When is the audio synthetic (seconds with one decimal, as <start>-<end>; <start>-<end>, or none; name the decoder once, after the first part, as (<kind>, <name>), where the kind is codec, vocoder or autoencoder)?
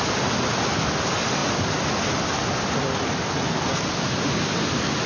none